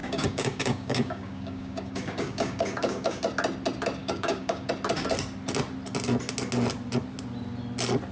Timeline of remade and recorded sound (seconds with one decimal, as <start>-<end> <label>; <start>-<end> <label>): 0.0-3.2 remade; 3.2-4.0 recorded; 4.0-4.7 remade; 4.7-8.1 recorded